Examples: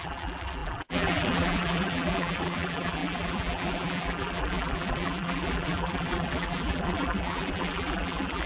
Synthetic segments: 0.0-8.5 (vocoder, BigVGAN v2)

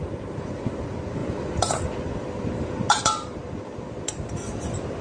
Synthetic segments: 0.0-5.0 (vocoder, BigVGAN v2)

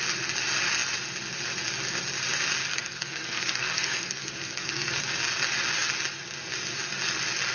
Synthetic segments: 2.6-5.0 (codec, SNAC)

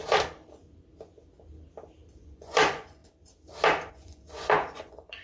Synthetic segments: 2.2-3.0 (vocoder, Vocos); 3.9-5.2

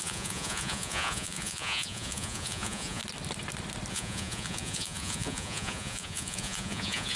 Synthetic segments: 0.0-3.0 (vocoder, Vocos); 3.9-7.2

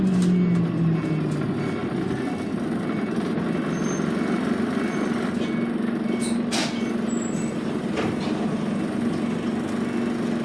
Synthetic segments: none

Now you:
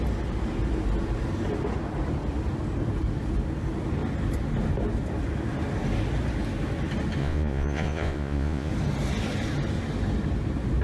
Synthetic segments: 7.2-8.7 (vocoder, Vocos)

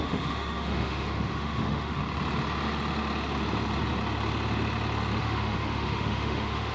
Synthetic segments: 0.0-2.0 (autoencoder, DAC-VAE); 5.2-6.7